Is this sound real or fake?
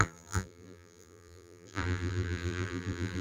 fake